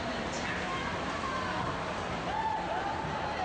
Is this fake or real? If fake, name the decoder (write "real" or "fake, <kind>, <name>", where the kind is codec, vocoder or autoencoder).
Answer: real